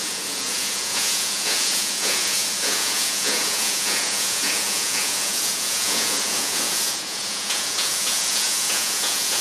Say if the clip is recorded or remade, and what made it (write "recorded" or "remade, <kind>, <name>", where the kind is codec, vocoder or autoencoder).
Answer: remade, vocoder, Vocos